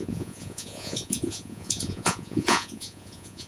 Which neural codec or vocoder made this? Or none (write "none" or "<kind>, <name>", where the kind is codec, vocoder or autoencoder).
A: vocoder, Vocos